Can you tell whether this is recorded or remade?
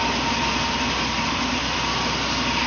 recorded